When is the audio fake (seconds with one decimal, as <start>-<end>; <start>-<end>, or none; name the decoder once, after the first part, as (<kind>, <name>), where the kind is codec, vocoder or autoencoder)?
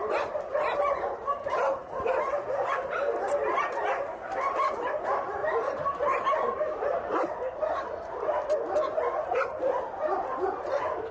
5.4-6.0 (vocoder, BigVGAN v2)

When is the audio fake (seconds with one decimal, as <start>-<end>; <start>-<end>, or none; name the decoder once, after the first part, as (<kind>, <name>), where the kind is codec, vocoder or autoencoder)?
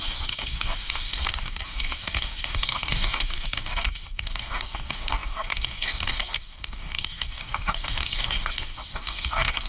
0.0-9.7 (codec, DAC)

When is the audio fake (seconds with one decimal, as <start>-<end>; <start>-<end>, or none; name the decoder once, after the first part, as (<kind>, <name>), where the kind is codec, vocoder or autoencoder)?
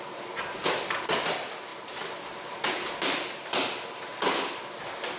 none